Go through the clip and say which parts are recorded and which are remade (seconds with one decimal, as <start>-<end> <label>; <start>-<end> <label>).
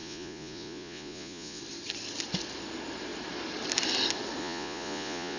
0.0-1.6 remade; 1.6-4.4 recorded; 4.4-5.4 remade